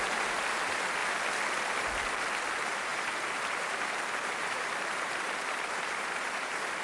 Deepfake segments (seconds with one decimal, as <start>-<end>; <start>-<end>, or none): 0.0-1.0; 2.5-6.8

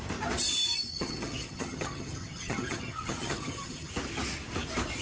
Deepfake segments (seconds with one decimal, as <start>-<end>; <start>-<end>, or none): 0.9-3.9